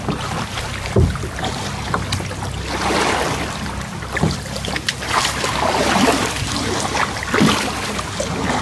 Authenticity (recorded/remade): recorded